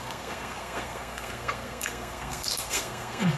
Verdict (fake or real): fake